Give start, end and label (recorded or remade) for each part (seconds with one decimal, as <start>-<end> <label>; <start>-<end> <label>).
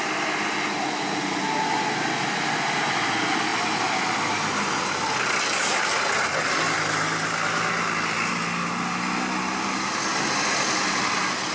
0.0-11.5 recorded